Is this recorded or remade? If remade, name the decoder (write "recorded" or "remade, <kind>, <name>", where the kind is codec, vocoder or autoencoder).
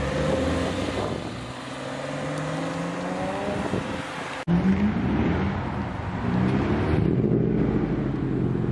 recorded